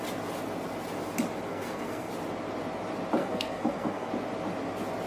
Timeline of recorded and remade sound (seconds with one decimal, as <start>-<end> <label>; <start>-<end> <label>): 0.0-1.5 recorded; 1.5-2.1 remade; 2.1-3.2 recorded; 3.2-4.1 remade; 4.1-5.1 recorded